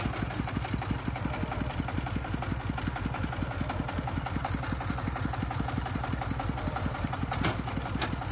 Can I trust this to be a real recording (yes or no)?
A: yes